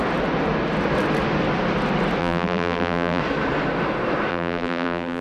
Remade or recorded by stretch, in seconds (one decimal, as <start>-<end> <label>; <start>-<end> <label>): 0.0-2.2 recorded; 2.2-3.2 remade; 3.2-4.3 recorded; 4.3-5.2 remade